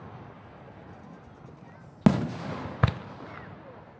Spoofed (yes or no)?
no